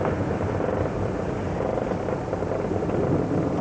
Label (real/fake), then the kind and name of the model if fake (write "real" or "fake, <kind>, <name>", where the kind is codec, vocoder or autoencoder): real